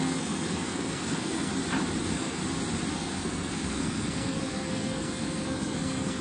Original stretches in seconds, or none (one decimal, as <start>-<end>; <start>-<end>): 1.5-2.0; 2.4-2.9